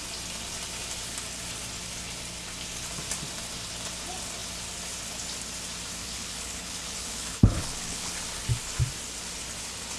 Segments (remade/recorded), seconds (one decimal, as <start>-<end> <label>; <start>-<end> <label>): 0.0-6.0 recorded; 6.0-8.1 remade; 8.1-10.0 recorded